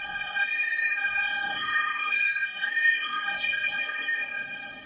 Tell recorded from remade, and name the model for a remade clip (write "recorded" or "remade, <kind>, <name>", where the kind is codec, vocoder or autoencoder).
remade, codec, SNAC